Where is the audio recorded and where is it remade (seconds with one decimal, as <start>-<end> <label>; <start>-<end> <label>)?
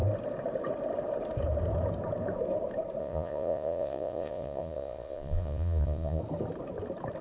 0.0-3.0 recorded; 3.0-6.2 remade; 6.2-7.2 recorded